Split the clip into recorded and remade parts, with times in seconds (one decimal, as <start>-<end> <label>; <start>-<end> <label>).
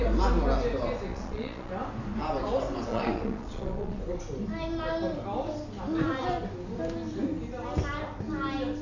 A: 0.0-1.1 recorded; 1.1-1.7 remade; 1.7-2.9 recorded; 2.9-4.0 remade; 4.0-8.8 recorded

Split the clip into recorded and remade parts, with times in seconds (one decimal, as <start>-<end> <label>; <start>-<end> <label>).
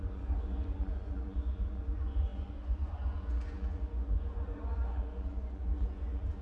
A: 0.0-6.4 remade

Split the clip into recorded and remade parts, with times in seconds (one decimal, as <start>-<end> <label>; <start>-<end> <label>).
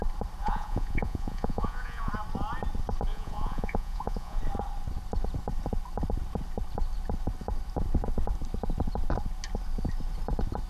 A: 0.0-0.4 recorded; 0.4-2.1 remade; 2.1-3.1 recorded; 3.1-4.4 remade; 4.4-10.7 recorded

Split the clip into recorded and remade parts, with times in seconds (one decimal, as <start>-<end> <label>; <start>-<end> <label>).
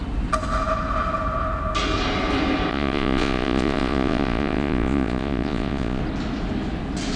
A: 0.0-2.7 recorded; 2.7-6.0 remade; 6.0-7.2 recorded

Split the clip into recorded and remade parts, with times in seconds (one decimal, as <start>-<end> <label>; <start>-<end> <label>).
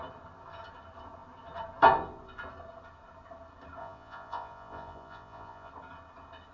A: 0.0-3.8 recorded; 3.8-5.7 remade; 5.7-6.5 recorded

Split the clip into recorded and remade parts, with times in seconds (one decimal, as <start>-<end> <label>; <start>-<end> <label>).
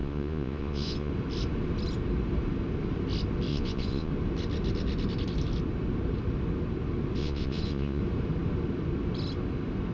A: 0.0-1.1 remade; 1.1-3.5 recorded; 3.5-4.1 remade; 4.1-7.2 recorded; 7.2-8.0 remade; 8.0-9.9 recorded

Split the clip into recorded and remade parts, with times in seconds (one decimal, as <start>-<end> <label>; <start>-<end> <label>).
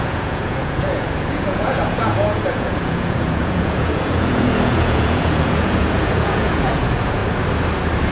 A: 0.0-7.2 remade; 7.2-8.1 recorded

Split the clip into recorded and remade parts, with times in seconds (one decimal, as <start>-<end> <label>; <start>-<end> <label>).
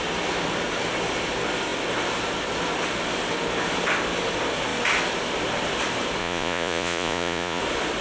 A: 0.0-6.2 recorded; 6.2-7.6 remade; 7.6-8.0 recorded